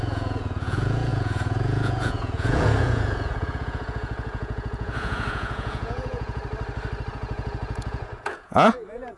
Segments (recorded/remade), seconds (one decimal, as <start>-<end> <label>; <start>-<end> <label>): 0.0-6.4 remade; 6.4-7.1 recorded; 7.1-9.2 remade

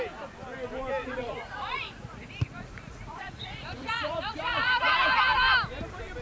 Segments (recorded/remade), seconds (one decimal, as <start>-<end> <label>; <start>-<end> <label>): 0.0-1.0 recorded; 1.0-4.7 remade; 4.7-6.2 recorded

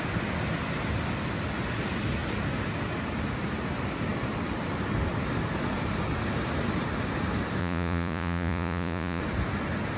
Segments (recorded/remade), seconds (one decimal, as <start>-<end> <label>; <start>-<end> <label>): 0.0-7.6 recorded; 7.6-9.2 remade; 9.2-10.0 recorded